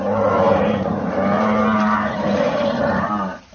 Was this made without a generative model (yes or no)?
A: no